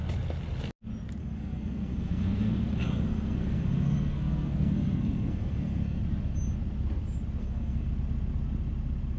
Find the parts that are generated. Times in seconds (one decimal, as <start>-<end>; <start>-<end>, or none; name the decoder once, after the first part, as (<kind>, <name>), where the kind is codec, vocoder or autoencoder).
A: 1.2-6.0 (codec, SNAC); 7.4-7.9